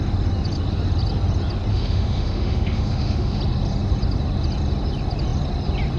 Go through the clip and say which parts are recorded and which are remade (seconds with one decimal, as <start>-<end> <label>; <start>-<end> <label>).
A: 0.0-1.7 recorded; 1.7-3.4 remade; 3.4-6.0 recorded